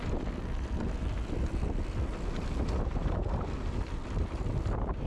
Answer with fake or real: real